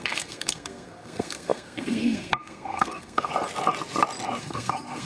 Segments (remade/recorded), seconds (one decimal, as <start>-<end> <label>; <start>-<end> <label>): 0.0-3.3 remade; 3.3-4.4 recorded; 4.4-5.1 remade